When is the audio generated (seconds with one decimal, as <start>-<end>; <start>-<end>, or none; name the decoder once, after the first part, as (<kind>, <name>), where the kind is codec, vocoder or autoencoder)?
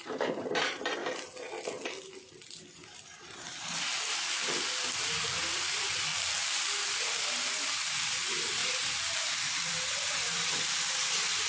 0.0-1.0 (vocoder, BigVGAN v2); 2.6-6.1; 7.2-11.5